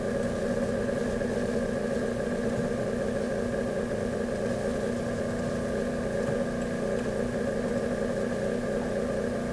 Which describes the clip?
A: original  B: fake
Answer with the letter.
A